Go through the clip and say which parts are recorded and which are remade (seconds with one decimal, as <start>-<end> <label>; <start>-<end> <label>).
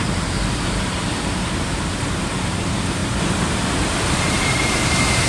0.0-3.0 remade; 3.0-4.1 recorded; 4.1-5.3 remade